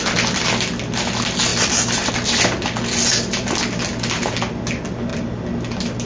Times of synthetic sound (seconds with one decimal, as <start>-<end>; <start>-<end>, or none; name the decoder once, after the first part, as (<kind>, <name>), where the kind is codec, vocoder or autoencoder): 1.5-2.1 (vocoder, BigVGAN v2)